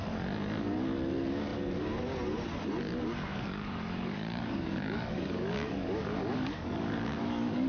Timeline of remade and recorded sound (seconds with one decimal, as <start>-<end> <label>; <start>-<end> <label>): 0.0-3.3 recorded; 3.3-7.7 remade